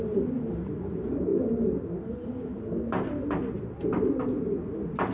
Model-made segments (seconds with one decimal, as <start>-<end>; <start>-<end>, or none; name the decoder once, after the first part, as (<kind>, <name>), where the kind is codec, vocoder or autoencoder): 0.0-1.3 (vocoder, BigVGAN v2); 4.4-5.1